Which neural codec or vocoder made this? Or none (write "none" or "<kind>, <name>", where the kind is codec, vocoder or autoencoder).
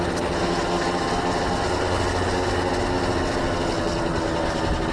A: none